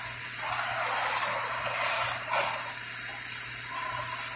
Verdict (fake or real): real